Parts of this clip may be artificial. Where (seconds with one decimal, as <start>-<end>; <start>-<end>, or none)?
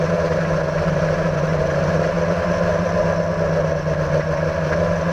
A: none